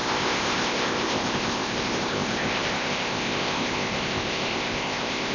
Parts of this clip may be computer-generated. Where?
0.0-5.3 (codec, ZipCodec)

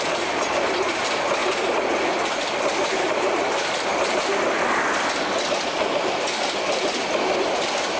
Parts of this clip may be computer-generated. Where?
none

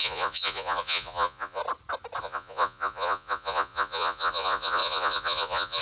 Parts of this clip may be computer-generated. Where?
0.0-1.6 (vocoder, Vocos); 2.2-5.8

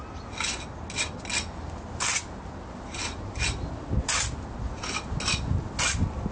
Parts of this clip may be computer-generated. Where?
none

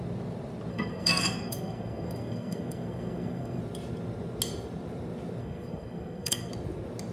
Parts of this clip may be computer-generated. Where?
0.7-3.6 (codec, SNAC); 5.4-6.5

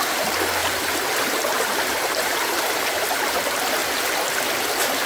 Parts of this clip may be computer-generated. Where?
0.0-3.8 (vocoder, BigVGAN v2)

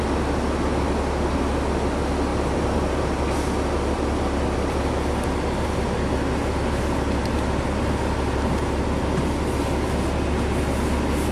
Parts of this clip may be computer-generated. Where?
2.3-3.0 (vocoder, BigVGAN v2)